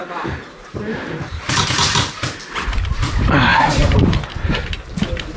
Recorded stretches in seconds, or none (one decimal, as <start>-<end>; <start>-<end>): 1.4-3.5; 4.5-5.4